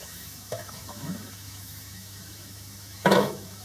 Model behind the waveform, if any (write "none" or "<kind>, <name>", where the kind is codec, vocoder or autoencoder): autoencoder, DAC-VAE